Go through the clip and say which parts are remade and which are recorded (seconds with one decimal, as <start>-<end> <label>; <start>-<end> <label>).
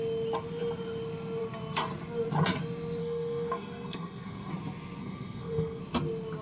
0.0-3.0 recorded; 3.0-4.5 remade; 4.5-5.0 recorded; 5.0-5.8 remade; 5.8-6.4 recorded